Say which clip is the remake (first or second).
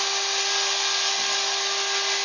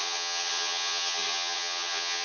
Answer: second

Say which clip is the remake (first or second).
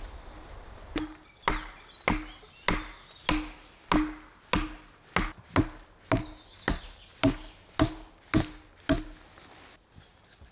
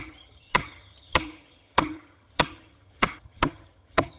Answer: second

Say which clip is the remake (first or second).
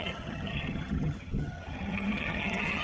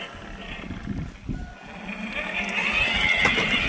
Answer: first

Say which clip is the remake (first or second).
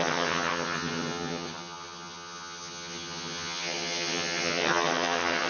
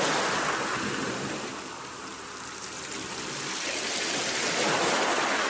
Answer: first